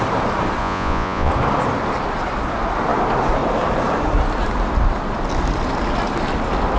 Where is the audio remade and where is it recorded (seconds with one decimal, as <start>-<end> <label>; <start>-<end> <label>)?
0.0-0.6 recorded; 0.6-1.3 remade; 1.3-6.8 recorded